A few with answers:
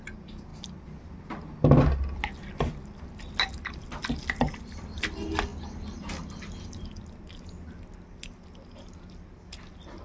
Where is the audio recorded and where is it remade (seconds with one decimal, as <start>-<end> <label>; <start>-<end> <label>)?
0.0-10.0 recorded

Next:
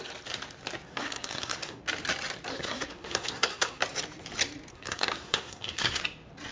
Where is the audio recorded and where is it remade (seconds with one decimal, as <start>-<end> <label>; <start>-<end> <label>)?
0.0-0.9 recorded; 0.9-1.8 remade; 1.8-2.5 recorded; 2.5-3.8 remade; 3.8-4.7 recorded; 4.7-6.0 remade; 6.0-6.5 recorded

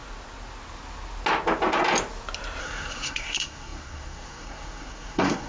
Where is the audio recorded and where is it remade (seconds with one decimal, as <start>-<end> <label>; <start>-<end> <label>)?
0.0-2.6 recorded; 2.6-5.5 remade